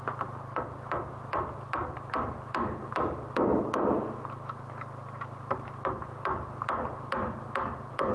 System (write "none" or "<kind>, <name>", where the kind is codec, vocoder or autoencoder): none